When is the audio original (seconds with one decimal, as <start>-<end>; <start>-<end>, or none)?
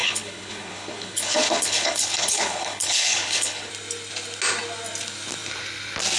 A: 3.7-6.2